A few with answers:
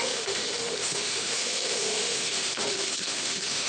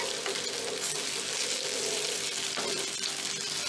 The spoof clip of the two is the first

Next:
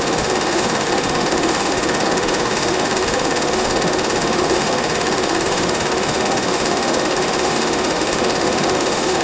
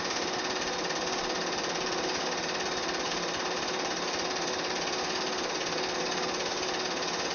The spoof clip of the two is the first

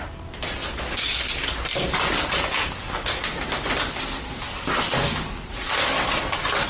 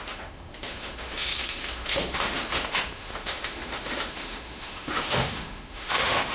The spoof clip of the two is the second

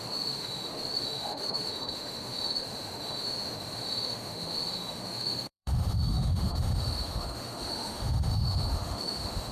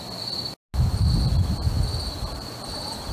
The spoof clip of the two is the first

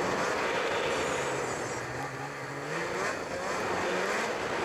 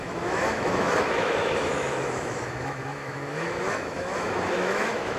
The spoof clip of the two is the second